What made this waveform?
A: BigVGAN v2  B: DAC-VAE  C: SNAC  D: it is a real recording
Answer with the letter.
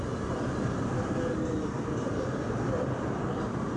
A